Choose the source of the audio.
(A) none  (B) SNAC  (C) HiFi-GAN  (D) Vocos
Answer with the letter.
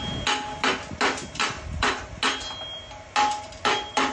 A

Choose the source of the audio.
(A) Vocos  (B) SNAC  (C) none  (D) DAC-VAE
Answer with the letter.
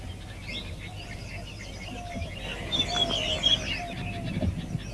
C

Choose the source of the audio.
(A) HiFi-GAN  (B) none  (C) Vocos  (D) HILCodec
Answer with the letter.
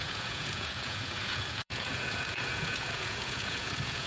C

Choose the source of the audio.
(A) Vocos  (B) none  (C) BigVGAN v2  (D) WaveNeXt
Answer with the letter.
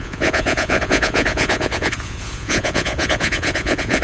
A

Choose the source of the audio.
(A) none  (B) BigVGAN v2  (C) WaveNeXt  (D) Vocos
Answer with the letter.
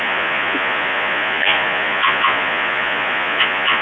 D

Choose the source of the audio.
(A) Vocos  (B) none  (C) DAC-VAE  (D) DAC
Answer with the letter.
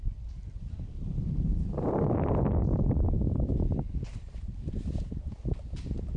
B